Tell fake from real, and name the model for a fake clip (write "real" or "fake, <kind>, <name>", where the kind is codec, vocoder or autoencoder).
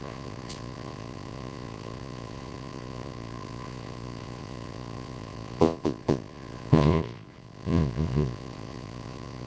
fake, vocoder, Vocos